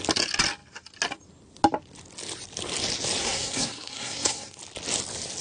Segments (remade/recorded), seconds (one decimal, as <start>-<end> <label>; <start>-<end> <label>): 0.0-3.2 recorded; 3.2-4.6 remade; 4.6-5.4 recorded